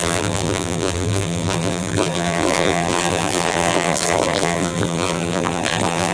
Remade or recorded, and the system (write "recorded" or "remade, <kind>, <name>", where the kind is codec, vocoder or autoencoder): remade, vocoder, BigVGAN v2